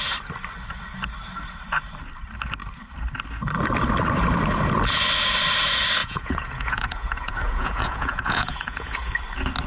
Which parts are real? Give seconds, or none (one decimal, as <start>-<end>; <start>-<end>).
0.0-6.0; 9.1-9.7